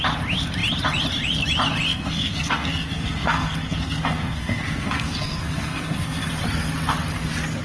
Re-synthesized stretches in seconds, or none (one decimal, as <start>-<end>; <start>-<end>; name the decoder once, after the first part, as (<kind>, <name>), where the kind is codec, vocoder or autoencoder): 1.9-6.3 (codec, SNAC)